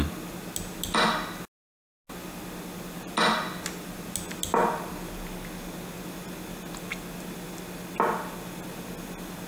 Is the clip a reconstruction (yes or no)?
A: no